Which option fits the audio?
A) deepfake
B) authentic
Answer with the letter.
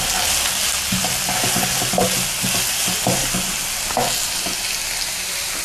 B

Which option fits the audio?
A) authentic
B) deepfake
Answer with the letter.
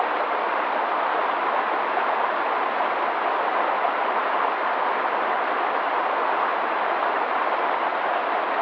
A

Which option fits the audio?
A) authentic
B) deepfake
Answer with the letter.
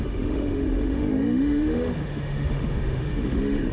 B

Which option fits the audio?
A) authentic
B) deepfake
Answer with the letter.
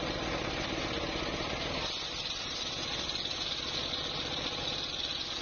A